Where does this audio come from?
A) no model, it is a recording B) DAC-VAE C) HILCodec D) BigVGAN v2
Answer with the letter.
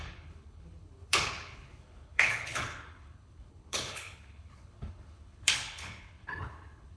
C